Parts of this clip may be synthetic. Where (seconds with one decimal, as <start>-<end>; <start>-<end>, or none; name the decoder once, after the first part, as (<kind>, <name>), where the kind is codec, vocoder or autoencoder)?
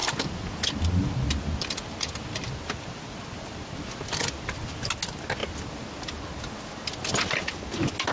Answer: 0.0-4.9 (vocoder, BigVGAN v2)